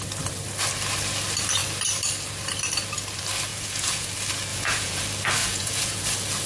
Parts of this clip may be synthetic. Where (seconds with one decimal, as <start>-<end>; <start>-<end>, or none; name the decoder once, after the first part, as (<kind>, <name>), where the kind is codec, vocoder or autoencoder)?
3.5-4.1 (vocoder, Vocos); 4.5-5.0; 5.4-6.0